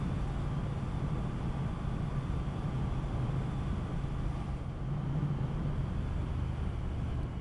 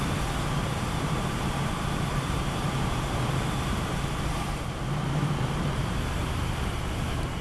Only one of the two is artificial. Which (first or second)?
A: second